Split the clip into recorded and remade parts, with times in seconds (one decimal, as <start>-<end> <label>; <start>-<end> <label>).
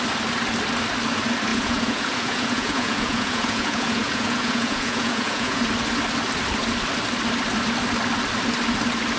0.0-1.5 recorded; 1.5-5.6 remade; 5.6-9.2 recorded